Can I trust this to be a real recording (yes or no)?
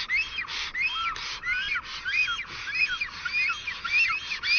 yes